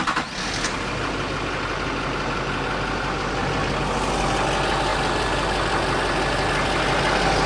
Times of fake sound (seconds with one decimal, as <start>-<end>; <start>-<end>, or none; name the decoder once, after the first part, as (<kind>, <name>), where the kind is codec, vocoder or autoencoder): none